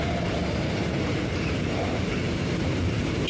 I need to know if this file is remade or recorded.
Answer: remade